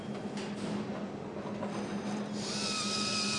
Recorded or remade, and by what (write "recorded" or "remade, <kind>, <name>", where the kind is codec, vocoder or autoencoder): recorded